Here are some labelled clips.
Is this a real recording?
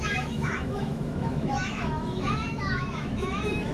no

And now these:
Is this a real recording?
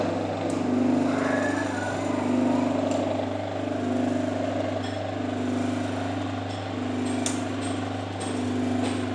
yes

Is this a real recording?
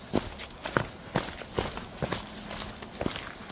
yes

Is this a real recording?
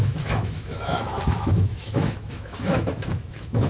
no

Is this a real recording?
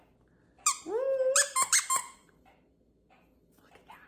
yes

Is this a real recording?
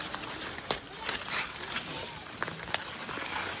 yes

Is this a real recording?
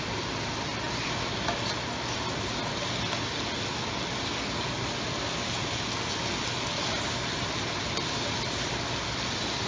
yes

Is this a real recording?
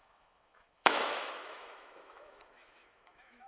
no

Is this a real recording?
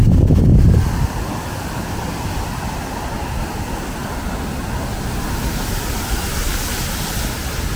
yes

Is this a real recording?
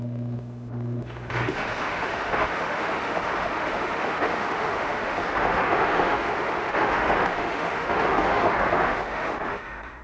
no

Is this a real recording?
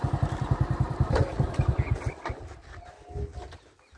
yes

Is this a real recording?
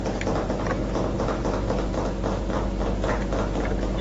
yes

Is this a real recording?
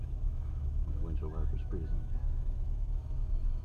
no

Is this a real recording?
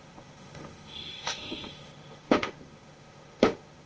no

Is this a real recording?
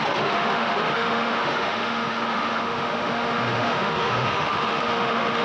no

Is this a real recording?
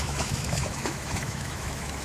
no